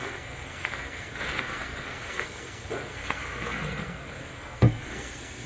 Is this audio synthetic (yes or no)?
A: yes